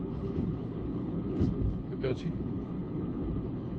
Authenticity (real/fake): fake